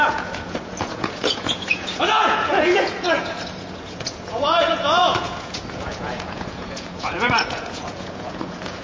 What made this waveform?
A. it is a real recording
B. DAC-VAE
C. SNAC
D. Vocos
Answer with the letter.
D